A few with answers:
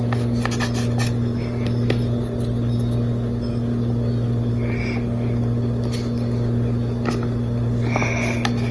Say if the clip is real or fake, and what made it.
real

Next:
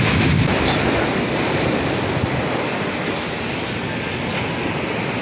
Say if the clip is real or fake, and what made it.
real